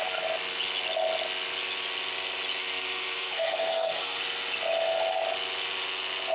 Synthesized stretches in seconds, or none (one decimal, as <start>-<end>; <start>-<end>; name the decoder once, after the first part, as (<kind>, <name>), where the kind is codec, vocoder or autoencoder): 2.6-4.2 (codec, SNAC)